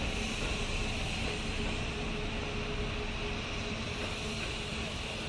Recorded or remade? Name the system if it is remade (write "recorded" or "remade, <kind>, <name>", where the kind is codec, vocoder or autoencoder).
recorded